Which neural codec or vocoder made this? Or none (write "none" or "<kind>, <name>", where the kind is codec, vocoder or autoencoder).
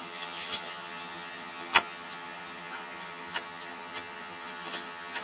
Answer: vocoder, HiFi-GAN